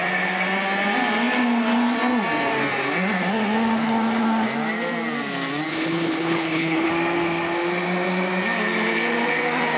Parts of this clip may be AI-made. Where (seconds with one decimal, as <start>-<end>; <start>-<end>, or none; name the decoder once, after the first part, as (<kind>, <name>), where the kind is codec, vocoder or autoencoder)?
5.7-6.9 (codec, HILCodec)